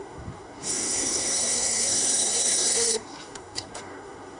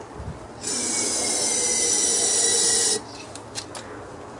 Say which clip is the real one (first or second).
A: second